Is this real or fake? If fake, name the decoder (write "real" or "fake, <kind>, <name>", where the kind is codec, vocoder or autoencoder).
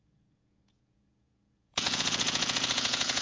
fake, vocoder, Vocos